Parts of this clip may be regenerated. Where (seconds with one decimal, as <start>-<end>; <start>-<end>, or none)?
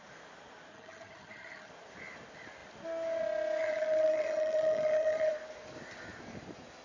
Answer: 0.7-1.7; 3.6-5.3